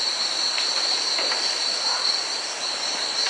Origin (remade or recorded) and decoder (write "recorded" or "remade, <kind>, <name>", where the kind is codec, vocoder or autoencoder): remade, vocoder, BigVGAN v2